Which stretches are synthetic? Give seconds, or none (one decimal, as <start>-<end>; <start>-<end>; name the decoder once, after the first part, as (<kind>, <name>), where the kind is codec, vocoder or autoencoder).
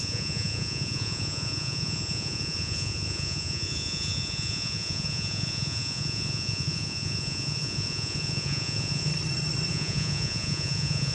0.0-9.1 (vocoder, Vocos); 9.7-11.1